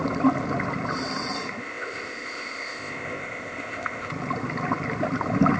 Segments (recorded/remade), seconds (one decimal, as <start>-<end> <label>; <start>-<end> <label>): 0.0-1.6 recorded; 1.6-4.1 remade; 4.1-5.6 recorded